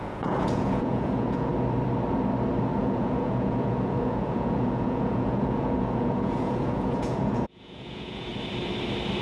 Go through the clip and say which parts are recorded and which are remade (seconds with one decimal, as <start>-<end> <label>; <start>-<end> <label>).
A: 0.0-1.5 remade; 1.5-2.8 recorded; 2.8-8.3 remade; 8.3-9.2 recorded